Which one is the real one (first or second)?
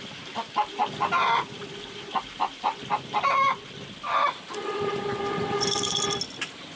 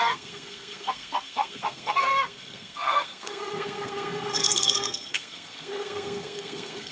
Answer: first